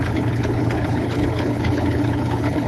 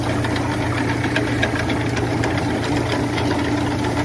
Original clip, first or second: second